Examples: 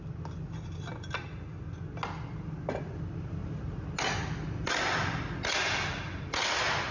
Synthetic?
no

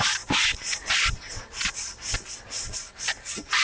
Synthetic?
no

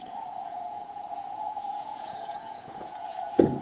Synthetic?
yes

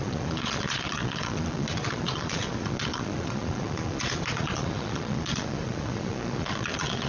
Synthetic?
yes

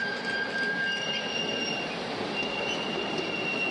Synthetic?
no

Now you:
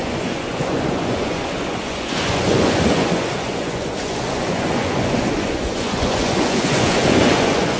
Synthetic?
yes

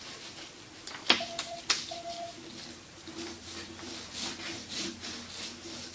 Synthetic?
no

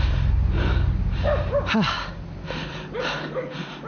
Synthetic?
no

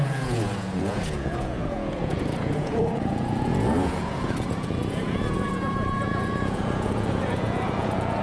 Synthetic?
yes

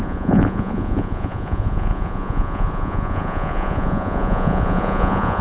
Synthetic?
yes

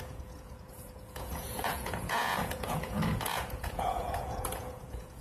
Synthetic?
yes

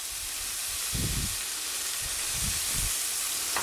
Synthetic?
no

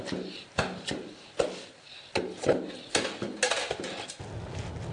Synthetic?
no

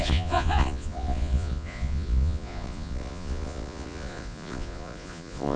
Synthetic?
yes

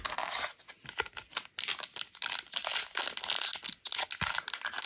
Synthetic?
no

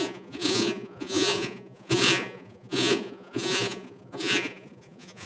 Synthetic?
yes